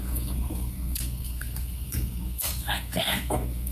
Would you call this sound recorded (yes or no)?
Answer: no